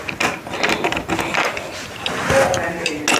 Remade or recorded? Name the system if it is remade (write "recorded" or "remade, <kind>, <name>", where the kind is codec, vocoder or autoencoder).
recorded